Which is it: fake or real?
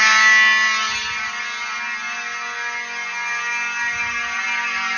real